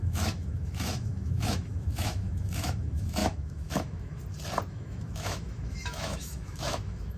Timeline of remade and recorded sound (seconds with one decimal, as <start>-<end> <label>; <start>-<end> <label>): 0.0-4.2 remade; 4.2-4.7 recorded; 4.7-7.2 remade